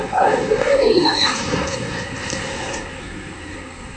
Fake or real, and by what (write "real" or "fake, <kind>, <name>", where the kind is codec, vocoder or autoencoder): fake, codec, SNAC